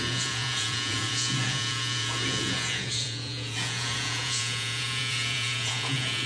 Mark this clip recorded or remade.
remade